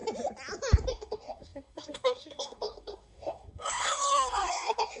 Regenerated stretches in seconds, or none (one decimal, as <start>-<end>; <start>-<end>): 0.9-5.0